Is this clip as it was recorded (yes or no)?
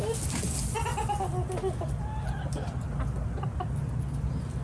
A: yes